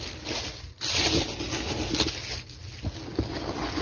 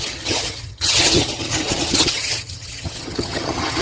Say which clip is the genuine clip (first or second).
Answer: first